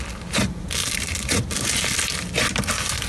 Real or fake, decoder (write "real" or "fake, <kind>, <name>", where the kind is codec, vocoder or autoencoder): real